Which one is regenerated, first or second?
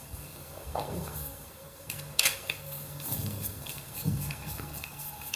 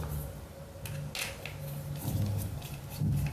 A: first